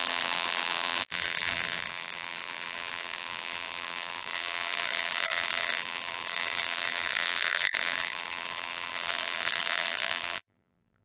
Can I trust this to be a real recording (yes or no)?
no